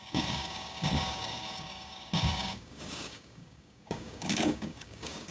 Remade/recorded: remade